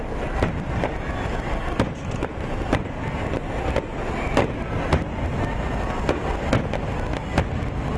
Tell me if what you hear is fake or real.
real